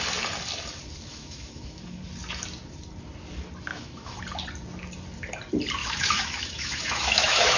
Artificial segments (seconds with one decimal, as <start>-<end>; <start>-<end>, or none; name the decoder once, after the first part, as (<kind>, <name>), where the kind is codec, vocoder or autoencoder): 1.1-2.0 (autoencoder, DAC-VAE); 3.7-4.2; 5.8-7.6